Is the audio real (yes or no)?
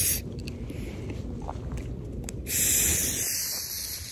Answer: yes